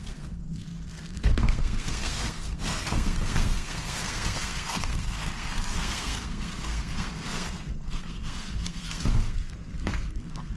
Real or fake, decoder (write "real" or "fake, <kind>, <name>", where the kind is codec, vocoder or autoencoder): fake, codec, SNAC